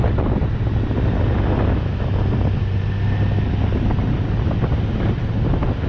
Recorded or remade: recorded